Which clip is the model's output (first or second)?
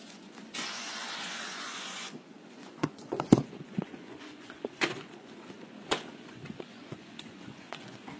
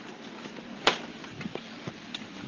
first